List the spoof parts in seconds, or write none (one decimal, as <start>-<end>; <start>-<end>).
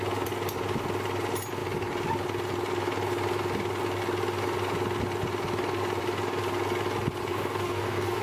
7.3-8.2